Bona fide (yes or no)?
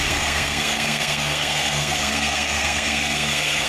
no